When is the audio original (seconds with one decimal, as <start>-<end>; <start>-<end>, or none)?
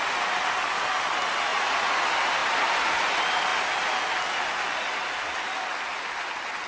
0.0-1.5; 2.0-6.7